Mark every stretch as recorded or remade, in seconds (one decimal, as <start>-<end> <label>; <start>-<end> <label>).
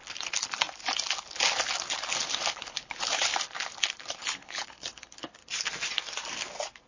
0.0-2.5 recorded; 2.5-3.3 remade; 3.3-4.2 recorded; 4.2-5.4 remade; 5.4-6.9 recorded